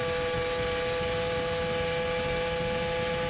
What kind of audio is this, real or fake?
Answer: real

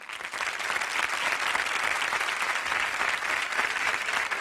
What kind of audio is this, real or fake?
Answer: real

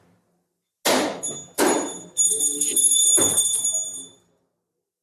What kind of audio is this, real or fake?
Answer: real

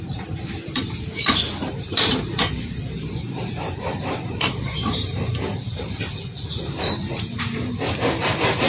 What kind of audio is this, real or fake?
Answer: fake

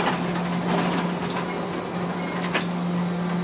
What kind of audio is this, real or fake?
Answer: real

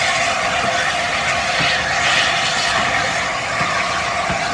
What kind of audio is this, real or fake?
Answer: real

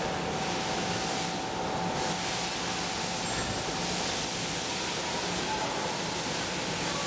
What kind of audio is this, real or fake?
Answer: real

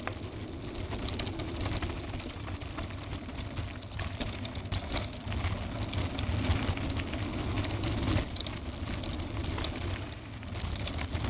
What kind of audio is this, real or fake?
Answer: real